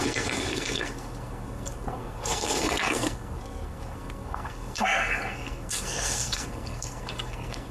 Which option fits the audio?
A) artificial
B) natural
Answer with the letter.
A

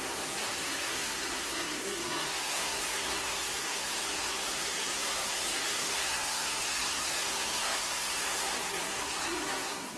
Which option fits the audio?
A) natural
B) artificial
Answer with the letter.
B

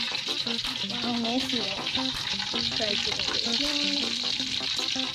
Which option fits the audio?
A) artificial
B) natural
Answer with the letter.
B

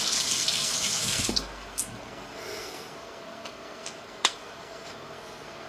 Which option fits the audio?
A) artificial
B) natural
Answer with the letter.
A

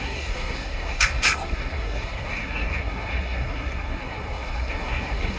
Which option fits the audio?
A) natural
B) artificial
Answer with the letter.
B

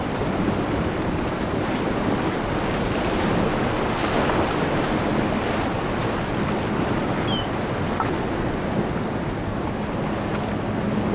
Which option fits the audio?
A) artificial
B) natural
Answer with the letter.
B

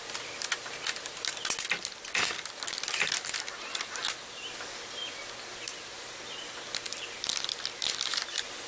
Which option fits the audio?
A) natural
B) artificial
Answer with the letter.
A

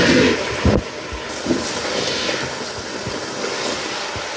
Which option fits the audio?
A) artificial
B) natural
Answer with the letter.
B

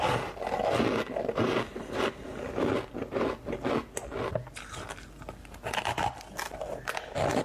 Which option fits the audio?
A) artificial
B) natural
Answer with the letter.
B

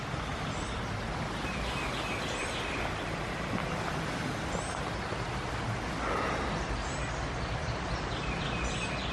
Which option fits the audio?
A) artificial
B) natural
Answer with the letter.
B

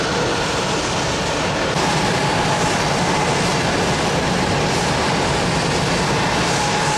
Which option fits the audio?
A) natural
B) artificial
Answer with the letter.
A